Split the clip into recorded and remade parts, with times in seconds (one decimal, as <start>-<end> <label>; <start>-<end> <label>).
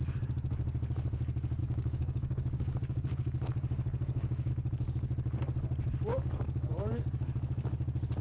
0.0-1.6 recorded; 1.6-4.5 remade; 4.5-6.1 recorded; 6.1-6.9 remade; 6.9-8.2 recorded